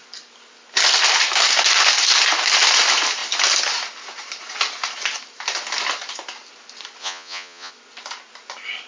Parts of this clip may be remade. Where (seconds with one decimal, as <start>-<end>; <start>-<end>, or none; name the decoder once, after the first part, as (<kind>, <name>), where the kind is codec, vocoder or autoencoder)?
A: 7.0-7.7 (vocoder, Vocos)